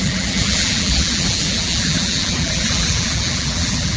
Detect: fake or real fake